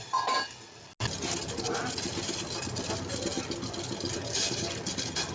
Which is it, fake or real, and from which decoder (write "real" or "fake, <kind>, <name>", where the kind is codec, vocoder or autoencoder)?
real